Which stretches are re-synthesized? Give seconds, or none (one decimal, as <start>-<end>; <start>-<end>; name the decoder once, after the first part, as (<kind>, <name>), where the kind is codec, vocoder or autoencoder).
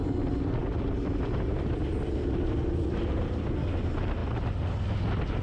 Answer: 0.6-3.8 (vocoder, BigVGAN v2)